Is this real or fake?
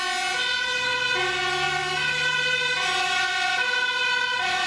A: real